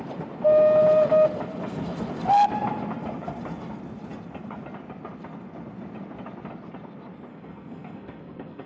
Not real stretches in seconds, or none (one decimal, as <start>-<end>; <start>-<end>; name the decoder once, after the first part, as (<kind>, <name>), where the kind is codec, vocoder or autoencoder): 7.3-8.7 (codec, SNAC)